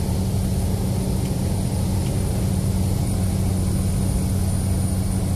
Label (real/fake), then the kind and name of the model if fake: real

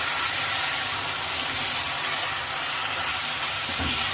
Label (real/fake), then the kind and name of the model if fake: fake, vocoder, BigVGAN v2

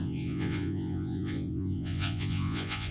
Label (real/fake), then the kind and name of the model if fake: fake, vocoder, Vocos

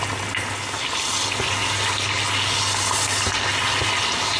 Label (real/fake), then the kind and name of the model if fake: real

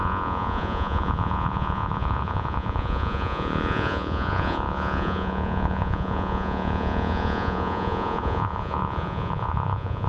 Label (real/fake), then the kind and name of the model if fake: fake, vocoder, Vocos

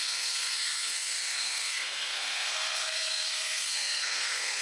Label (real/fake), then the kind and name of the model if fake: fake, codec, SNAC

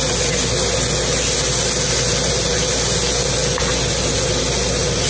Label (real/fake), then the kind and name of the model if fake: real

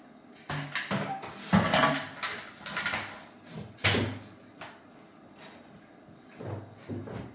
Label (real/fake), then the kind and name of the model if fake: real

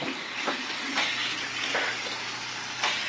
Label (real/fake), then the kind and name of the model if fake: real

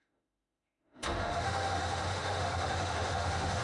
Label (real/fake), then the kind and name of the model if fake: fake, autoencoder, DAC-VAE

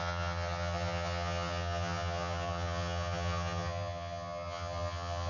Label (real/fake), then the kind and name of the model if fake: fake, vocoder, HiFi-GAN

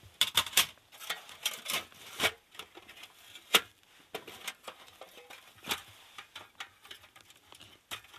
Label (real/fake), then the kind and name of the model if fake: real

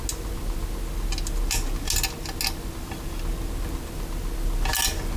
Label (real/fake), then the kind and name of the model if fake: real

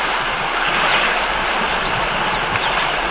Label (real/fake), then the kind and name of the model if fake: real